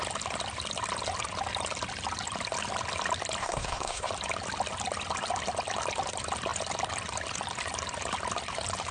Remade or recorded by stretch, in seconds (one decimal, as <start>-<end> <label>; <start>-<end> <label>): 0.0-3.4 recorded; 3.4-4.1 remade; 4.1-8.9 recorded

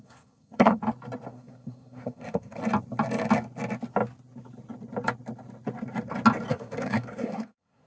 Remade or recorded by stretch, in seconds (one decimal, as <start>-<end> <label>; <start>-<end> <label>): 0.0-0.8 remade; 0.8-1.3 recorded; 1.3-2.6 remade; 2.6-6.5 recorded; 6.5-7.9 remade